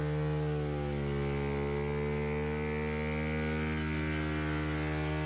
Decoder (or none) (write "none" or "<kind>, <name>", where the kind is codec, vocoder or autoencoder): none